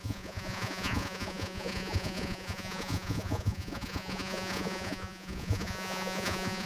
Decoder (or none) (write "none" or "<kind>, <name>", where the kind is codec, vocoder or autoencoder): vocoder, Vocos